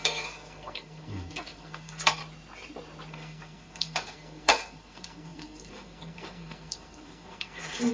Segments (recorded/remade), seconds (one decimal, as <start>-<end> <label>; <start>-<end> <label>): 0.0-2.2 remade; 2.2-3.1 recorded; 3.1-7.9 remade